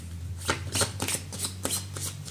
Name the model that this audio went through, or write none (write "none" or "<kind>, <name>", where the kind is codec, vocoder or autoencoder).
none